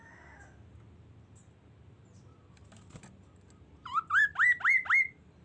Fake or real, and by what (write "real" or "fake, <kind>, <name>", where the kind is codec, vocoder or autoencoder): real